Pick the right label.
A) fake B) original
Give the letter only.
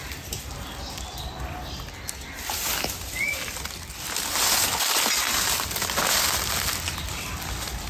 B